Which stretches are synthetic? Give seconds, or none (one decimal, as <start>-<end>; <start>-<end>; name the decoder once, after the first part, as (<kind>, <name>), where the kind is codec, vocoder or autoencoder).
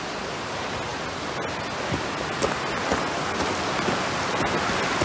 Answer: none